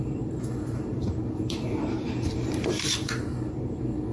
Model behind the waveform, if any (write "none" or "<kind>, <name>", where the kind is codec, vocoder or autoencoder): vocoder, BigVGAN v2